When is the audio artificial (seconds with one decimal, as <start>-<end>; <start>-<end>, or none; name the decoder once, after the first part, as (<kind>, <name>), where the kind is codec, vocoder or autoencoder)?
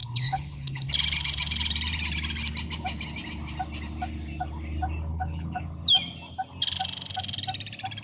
0.0-0.9 (codec, HILCodec); 5.1-5.6